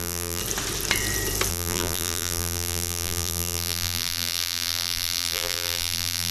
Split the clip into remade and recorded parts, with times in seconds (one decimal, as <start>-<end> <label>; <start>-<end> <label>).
0.0-0.4 remade; 0.4-1.5 recorded; 1.5-6.3 remade